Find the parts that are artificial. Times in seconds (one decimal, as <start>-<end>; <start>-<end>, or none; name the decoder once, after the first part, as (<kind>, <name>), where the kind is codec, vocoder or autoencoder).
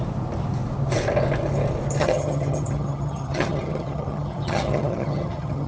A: 2.0-5.7 (vocoder, HiFi-GAN)